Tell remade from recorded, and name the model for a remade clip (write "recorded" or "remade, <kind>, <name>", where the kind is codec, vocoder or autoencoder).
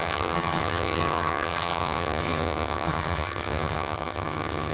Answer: remade, vocoder, HiFi-GAN